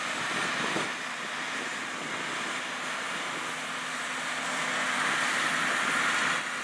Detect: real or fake real